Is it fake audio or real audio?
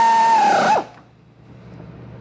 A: real